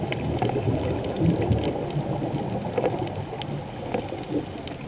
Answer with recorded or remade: recorded